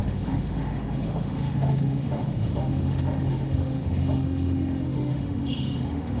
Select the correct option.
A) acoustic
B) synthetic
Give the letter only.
B